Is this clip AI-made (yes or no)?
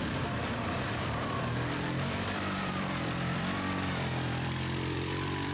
yes